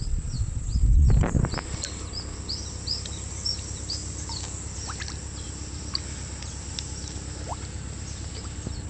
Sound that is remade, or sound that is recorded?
recorded